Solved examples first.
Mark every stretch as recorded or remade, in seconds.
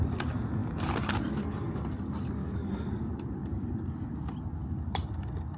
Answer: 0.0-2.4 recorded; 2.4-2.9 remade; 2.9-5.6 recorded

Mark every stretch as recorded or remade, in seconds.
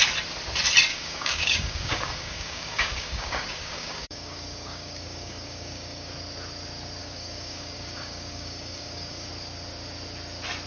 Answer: 0.0-0.9 recorded; 0.9-6.1 remade; 6.1-7.0 recorded; 7.0-9.3 remade; 9.3-10.7 recorded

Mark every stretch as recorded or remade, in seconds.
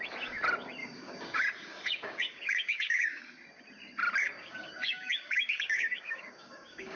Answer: 0.0-0.8 recorded; 0.8-3.2 remade; 3.2-4.2 recorded; 4.2-7.0 remade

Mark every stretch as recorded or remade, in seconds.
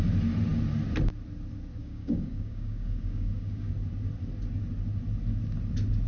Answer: 0.0-1.8 recorded; 1.8-3.7 remade; 3.7-6.1 recorded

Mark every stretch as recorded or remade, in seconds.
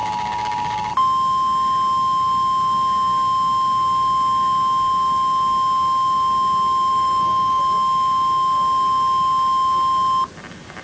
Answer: 0.0-0.9 remade; 0.9-6.9 recorded; 6.9-7.6 remade; 7.6-10.8 recorded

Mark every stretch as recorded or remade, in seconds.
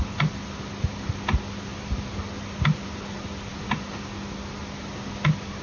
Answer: 0.0-5.6 recorded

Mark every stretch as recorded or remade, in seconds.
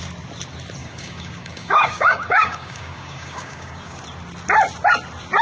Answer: 0.0-0.8 recorded; 0.8-4.0 remade; 4.0-5.4 recorded